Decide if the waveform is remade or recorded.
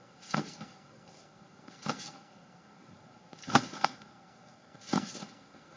remade